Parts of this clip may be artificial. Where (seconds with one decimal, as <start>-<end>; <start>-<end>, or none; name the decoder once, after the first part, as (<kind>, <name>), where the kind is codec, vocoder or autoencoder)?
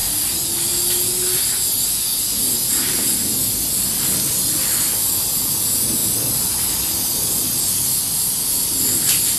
none